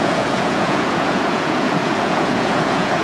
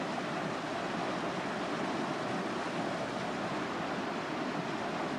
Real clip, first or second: second